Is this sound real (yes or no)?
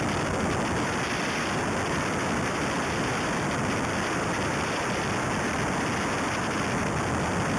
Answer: yes